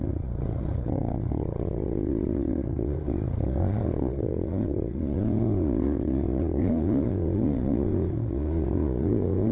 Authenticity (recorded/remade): remade